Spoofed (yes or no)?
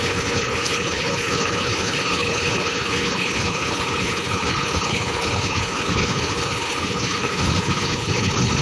yes